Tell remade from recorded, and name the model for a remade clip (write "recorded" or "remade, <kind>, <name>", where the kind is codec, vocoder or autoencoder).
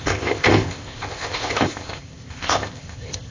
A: remade, codec, ZipCodec